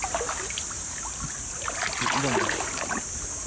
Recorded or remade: recorded